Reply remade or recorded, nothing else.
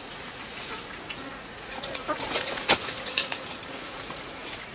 remade